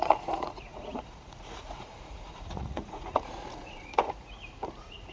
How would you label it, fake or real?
fake